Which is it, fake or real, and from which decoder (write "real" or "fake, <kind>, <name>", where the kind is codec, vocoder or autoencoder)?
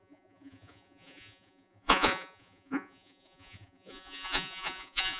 fake, vocoder, Vocos